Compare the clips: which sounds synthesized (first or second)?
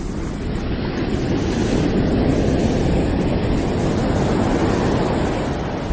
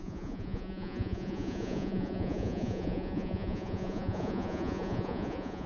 second